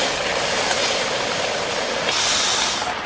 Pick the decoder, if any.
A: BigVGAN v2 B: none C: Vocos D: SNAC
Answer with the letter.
B